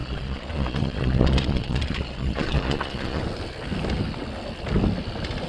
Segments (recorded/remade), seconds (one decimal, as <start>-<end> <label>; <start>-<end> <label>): 0.0-3.2 remade; 3.2-5.5 recorded